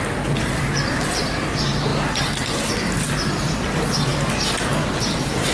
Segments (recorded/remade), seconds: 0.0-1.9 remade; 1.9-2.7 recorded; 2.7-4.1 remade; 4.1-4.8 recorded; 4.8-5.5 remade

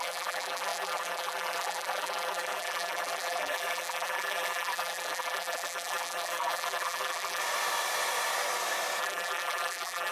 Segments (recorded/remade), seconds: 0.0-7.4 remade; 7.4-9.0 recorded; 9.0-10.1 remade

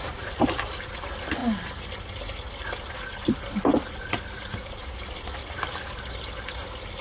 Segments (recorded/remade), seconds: 0.0-3.7 recorded; 3.7-5.0 remade; 5.0-7.0 recorded

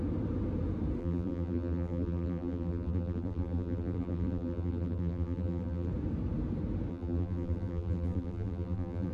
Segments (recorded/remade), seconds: 0.0-1.0 recorded; 1.0-5.9 remade; 5.9-6.9 recorded; 6.9-9.1 remade

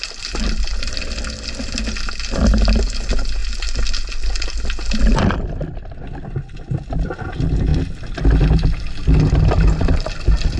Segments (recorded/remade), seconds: 0.0-10.6 recorded

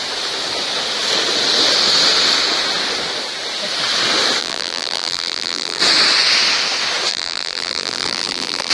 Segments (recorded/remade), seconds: 0.0-4.4 recorded; 4.4-5.8 remade; 5.8-7.1 recorded; 7.1-8.7 remade